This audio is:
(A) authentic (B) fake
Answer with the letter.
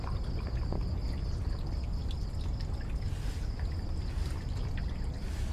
A